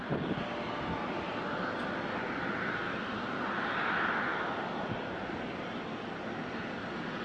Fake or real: real